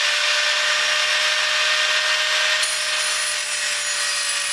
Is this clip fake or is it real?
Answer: real